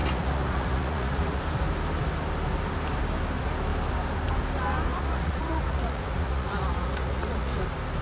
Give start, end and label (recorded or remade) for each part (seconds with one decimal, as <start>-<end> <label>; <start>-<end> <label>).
0.0-1.4 remade; 1.4-4.9 recorded; 4.9-7.6 remade; 7.6-8.0 recorded